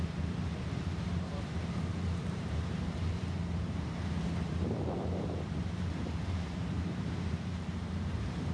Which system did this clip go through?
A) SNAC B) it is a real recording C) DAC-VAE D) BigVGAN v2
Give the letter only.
D